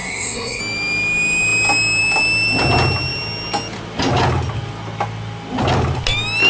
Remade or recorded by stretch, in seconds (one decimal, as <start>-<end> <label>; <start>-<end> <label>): 0.0-0.6 remade; 0.6-6.5 recorded

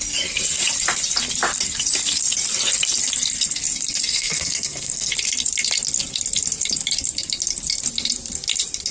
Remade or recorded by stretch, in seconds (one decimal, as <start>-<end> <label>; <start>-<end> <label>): 0.0-4.1 recorded; 4.1-5.1 remade; 5.1-8.9 recorded